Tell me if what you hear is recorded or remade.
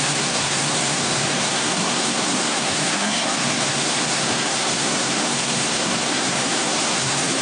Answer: remade